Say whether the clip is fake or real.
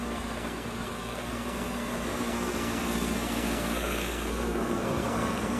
fake